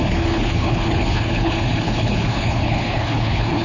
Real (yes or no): no